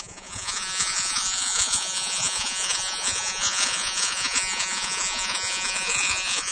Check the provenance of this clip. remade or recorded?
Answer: remade